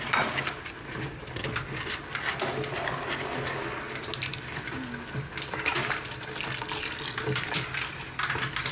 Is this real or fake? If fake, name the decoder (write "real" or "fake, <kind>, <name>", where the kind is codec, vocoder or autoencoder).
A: real